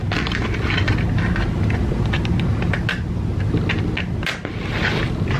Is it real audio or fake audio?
real